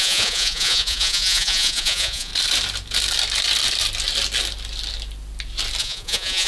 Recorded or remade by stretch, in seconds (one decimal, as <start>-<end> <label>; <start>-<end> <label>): 0.0-2.3 remade; 2.3-5.8 recorded; 5.8-6.5 remade